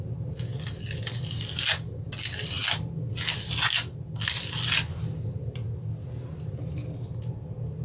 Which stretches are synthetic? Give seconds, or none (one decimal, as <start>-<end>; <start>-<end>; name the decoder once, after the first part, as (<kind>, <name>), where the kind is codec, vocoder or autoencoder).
none

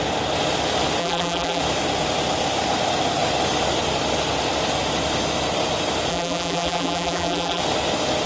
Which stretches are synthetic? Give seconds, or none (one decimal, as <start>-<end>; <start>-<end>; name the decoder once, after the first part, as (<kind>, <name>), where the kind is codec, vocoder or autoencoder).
1.0-1.6 (vocoder, BigVGAN v2); 6.1-7.6

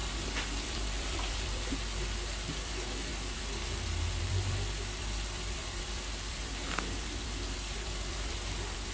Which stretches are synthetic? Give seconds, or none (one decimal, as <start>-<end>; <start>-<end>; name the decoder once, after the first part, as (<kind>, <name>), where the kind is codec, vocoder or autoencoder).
0.0-8.9 (vocoder, BigVGAN v2)